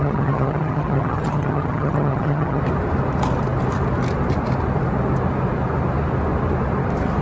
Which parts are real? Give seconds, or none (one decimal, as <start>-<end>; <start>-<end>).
2.6-7.2